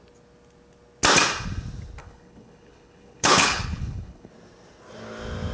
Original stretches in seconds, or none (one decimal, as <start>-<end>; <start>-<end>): 0.0-2.0; 4.3-5.5